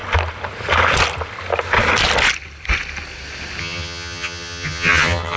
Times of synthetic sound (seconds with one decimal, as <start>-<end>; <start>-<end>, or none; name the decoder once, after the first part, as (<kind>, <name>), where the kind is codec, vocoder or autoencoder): 3.6-5.4 (vocoder, HiFi-GAN)